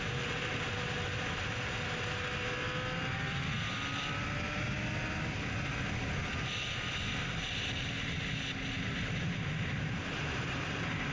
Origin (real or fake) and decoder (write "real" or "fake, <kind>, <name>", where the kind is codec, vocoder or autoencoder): real